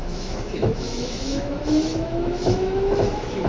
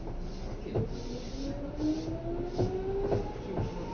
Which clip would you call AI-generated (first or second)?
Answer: first